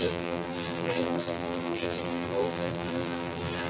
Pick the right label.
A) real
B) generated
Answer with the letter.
B